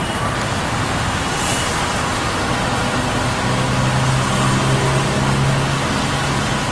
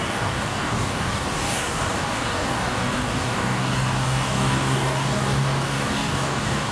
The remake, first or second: second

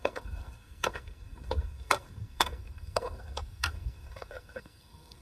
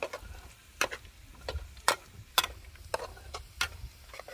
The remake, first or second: first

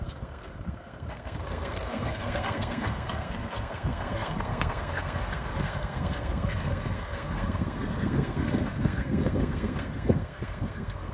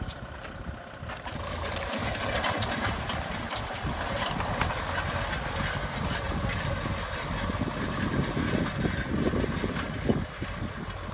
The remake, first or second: first